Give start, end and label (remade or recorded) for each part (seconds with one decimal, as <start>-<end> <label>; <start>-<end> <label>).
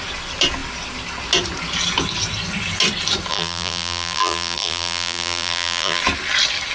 0.0-3.3 recorded; 3.3-6.0 remade; 6.0-6.7 recorded